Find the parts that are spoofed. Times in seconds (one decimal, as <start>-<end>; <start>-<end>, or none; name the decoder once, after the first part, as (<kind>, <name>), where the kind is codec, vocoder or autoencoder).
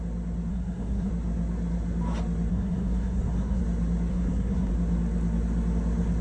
0.5-1.1 (codec, SNAC); 2.5-3.6; 4.1-4.7